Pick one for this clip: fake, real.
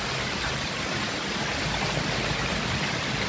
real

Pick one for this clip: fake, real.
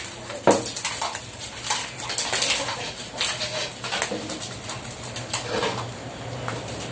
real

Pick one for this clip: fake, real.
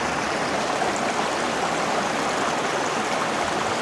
real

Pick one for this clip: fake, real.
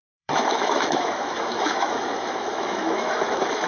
fake